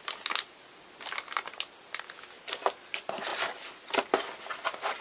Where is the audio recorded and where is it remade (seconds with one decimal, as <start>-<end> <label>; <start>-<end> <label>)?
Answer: 0.0-5.0 recorded